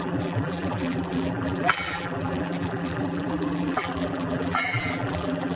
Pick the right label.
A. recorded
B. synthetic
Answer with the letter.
B